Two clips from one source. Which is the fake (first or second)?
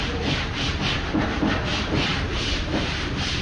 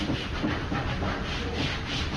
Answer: first